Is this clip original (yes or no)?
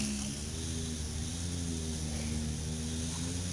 yes